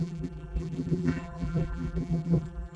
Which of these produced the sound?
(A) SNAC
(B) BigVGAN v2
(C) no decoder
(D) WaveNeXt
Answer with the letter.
B